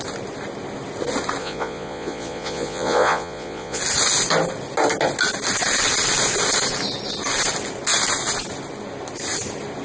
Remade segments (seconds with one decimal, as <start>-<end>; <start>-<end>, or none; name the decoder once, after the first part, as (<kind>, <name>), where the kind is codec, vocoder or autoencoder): 1.4-3.8 (vocoder, Vocos)